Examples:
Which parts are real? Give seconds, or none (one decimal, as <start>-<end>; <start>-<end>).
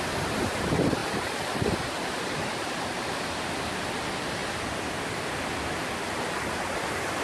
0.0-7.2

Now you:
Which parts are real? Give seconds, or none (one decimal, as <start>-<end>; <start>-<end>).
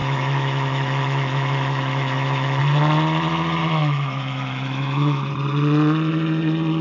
2.6-3.6; 5.3-6.8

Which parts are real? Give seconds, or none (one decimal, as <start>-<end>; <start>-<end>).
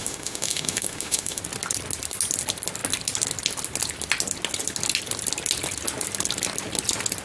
1.4-7.2